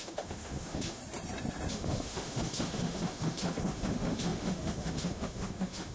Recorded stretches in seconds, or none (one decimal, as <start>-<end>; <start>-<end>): 1.0-1.7